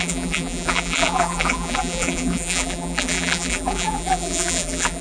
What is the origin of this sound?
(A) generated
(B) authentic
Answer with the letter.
A